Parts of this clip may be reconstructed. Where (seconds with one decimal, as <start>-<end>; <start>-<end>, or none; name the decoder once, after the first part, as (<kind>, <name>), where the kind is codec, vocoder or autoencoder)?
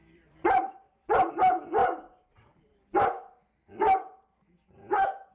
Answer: 0.0-1.3 (vocoder, BigVGAN v2)